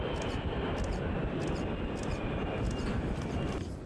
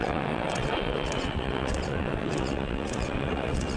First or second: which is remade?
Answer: second